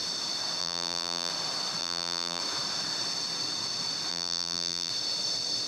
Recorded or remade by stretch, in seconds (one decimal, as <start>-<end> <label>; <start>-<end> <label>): 0.0-0.6 recorded; 0.6-1.3 remade; 1.3-1.8 recorded; 1.8-2.4 remade; 2.4-4.1 recorded; 4.1-4.9 remade; 4.9-5.7 recorded